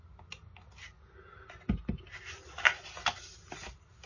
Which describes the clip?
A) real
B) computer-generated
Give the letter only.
A